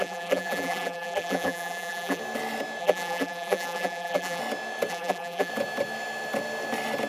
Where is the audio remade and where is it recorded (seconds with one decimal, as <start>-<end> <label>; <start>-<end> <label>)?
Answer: 0.0-2.2 remade; 2.2-2.8 recorded; 2.8-4.4 remade; 4.4-4.9 recorded; 4.9-5.5 remade; 5.5-7.1 recorded